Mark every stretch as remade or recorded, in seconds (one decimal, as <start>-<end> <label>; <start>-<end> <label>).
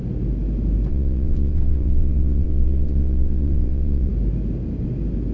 0.0-0.9 recorded; 0.9-4.1 remade; 4.1-5.3 recorded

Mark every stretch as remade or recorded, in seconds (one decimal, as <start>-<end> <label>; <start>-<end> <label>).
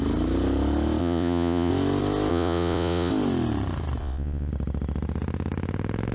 0.0-1.0 recorded; 1.0-1.7 remade; 1.7-2.3 recorded; 2.3-3.1 remade; 3.1-4.0 recorded; 4.0-4.5 remade; 4.5-6.1 recorded